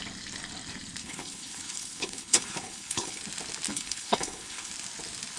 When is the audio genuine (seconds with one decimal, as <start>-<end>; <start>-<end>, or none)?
0.0-1.0; 3.2-3.7; 4.7-5.4